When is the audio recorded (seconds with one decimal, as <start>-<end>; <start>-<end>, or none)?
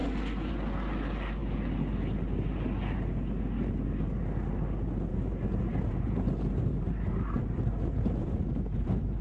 0.0-5.1